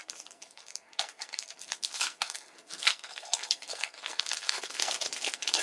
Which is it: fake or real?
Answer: fake